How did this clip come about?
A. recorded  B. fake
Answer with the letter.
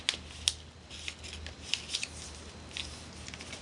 A